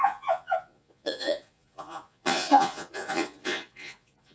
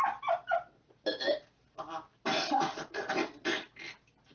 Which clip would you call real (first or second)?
second